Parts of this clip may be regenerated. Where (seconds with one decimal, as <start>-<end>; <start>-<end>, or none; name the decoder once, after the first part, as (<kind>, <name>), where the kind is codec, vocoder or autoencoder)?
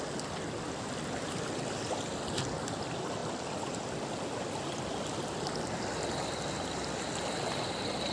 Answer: none